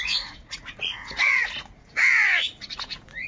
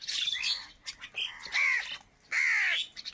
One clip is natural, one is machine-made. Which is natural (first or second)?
second